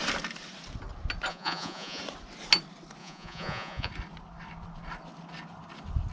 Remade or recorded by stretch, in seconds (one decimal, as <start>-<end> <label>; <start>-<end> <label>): 0.0-1.3 recorded; 1.3-2.0 remade; 2.0-3.0 recorded; 3.0-3.9 remade; 3.9-6.1 recorded